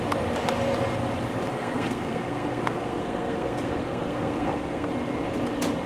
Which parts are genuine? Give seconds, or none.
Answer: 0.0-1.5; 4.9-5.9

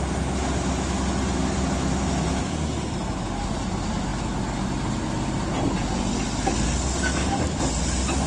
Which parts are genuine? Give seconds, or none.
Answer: 0.0-8.3

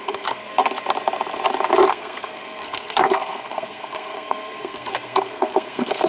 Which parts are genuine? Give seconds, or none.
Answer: 0.5-1.9

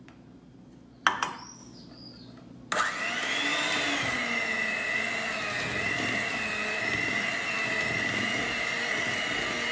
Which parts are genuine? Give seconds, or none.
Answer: 0.0-9.7

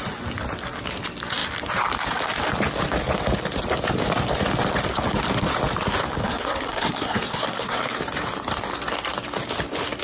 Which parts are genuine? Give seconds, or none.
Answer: 0.0-6.2; 8.0-10.0

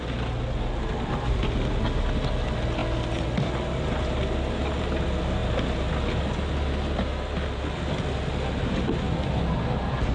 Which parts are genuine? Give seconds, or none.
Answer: 0.0-10.1